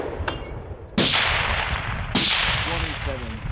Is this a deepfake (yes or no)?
no